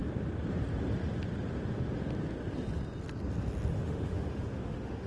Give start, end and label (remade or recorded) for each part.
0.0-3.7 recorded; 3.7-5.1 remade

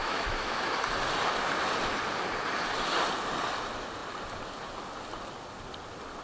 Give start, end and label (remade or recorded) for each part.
0.0-0.6 remade; 0.6-6.2 recorded

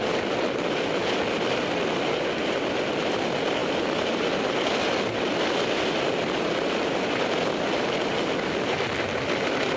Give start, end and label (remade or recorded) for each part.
0.0-9.8 recorded

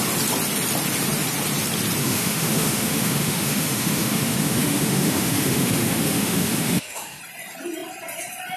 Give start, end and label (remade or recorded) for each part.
0.0-2.0 recorded; 2.0-7.2 remade; 7.2-8.6 recorded

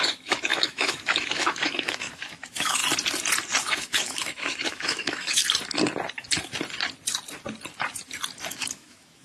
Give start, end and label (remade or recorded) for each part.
0.0-2.8 remade; 2.8-3.6 recorded; 3.6-5.4 remade; 5.4-8.5 recorded; 8.5-9.2 remade

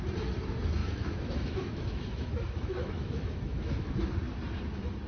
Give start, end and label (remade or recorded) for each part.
0.0-0.8 recorded; 0.8-3.9 remade; 3.9-5.1 recorded